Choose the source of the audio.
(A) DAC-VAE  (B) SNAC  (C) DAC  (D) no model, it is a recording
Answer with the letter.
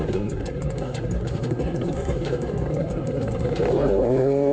B